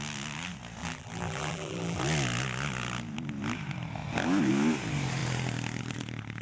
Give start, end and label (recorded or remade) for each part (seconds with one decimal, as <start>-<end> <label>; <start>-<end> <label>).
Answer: 0.0-0.8 recorded; 0.8-2.0 remade; 2.0-6.4 recorded